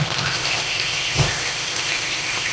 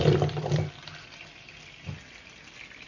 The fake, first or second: first